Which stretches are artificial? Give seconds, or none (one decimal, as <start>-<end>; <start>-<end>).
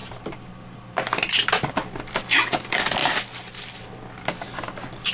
none